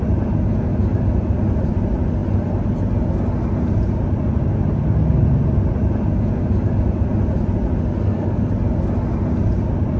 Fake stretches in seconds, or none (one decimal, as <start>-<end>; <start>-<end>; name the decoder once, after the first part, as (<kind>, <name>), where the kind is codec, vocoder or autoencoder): 8.0-8.5 (codec, SNAC)